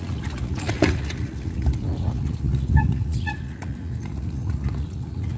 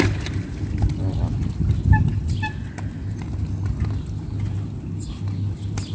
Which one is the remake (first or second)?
first